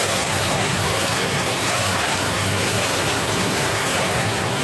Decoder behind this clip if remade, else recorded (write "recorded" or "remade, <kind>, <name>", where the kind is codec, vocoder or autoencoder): remade, codec, SNAC